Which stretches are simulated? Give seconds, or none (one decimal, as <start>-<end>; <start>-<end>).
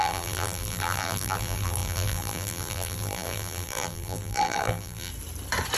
0.0-5.1